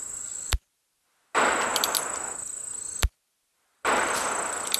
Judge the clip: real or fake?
real